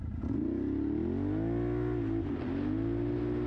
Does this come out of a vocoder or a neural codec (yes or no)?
no